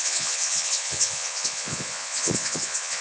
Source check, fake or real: fake